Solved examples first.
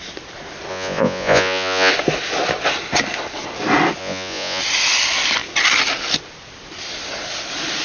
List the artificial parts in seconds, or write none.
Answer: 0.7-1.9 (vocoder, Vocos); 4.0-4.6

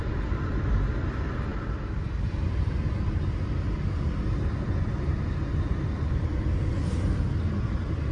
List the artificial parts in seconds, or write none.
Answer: 0.0-1.5 (vocoder, BigVGAN v2); 6.1-8.1

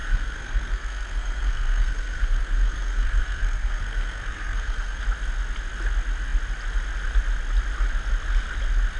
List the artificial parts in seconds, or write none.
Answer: 0.0-5.0 (codec, SNAC)

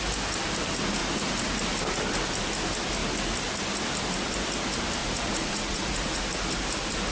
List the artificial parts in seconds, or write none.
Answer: 5.0-6.2 (vocoder, Vocos)